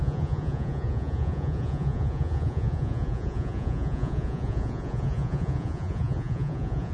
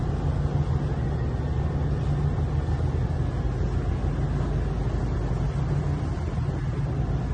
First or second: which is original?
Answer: second